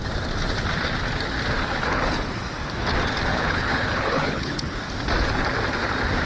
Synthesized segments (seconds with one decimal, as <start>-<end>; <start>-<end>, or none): 3.3-4.8